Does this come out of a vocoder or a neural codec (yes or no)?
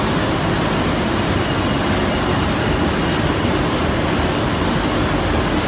no